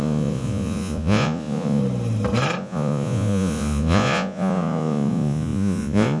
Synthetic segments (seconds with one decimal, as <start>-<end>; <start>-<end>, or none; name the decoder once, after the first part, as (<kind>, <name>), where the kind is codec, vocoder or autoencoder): 0.0-1.8 (vocoder, Vocos); 2.6-6.2

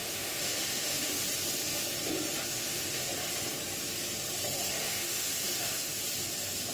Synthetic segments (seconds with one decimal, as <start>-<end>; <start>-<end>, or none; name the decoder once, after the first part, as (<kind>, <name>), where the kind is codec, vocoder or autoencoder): 0.0-1.2 (autoencoder, DAC-VAE); 2.5-3.1; 4.7-6.0

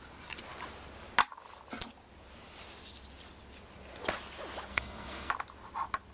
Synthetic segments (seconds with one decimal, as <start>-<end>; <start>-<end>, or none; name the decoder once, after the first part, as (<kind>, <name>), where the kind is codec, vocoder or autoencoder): 4.7-5.3 (codec, SNAC)

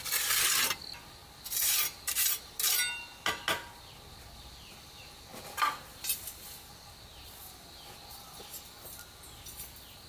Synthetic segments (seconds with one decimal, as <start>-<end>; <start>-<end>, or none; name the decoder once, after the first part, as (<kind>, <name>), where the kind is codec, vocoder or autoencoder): none

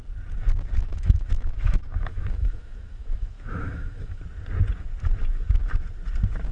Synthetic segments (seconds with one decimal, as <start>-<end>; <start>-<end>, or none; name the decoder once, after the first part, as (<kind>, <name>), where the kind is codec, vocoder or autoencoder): 0.9-4.2 (autoencoder, DAC-VAE)